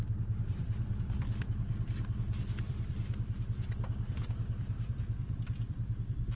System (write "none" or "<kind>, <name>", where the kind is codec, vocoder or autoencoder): vocoder, BigVGAN v2